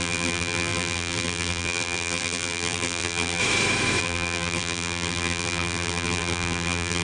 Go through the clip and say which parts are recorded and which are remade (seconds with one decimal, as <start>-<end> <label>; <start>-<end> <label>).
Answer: 0.0-3.4 remade; 3.4-4.0 recorded; 4.0-7.0 remade